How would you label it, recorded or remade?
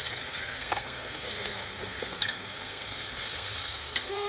remade